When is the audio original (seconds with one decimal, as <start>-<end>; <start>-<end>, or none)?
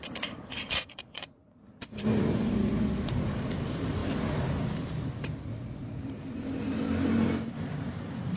none